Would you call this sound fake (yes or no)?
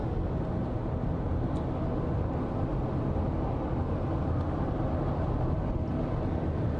no